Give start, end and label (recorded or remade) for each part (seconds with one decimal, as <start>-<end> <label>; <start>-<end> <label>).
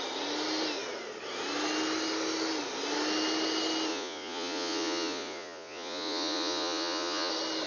0.0-3.9 recorded; 3.9-7.3 remade; 7.3-7.7 recorded